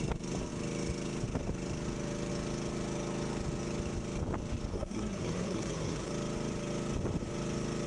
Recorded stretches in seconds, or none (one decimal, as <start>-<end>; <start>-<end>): 0.0-4.7; 6.1-7.9

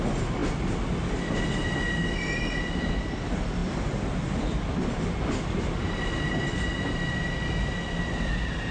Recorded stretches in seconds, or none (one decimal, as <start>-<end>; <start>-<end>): 0.0-8.7

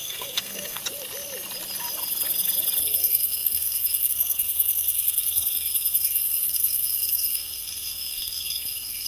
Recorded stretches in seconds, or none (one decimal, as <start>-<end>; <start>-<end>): 0.8-2.8

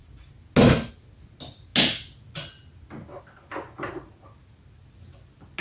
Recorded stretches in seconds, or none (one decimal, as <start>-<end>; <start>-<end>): 0.0-5.6

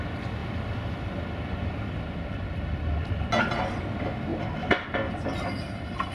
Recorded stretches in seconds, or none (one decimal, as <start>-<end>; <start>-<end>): 0.0-6.1

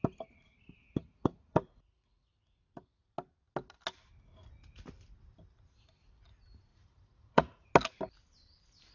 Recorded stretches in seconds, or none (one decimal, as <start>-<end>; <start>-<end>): 0.0-0.8; 2.3-6.7; 7.7-8.9